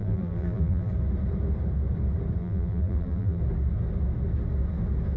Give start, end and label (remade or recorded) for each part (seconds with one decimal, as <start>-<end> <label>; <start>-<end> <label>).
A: 0.0-0.9 remade; 0.9-2.4 recorded; 2.4-3.4 remade; 3.4-5.2 recorded